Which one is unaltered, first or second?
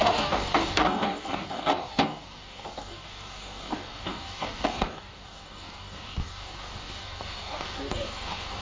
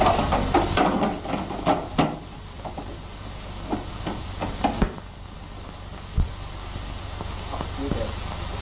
second